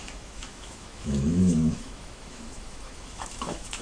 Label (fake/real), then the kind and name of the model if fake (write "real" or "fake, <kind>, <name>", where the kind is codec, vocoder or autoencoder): fake, autoencoder, DAC-VAE